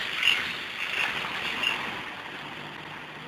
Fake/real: real